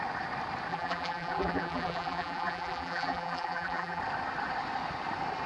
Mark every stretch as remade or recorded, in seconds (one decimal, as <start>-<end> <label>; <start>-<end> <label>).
0.0-0.7 recorded; 0.7-4.0 remade; 4.0-5.5 recorded